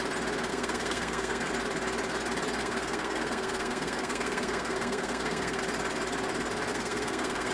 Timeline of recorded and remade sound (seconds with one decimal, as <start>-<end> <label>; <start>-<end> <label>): 0.0-0.5 recorded; 0.5-1.5 remade; 1.5-2.6 recorded; 2.6-5.6 remade; 5.6-6.7 recorded; 6.7-7.5 remade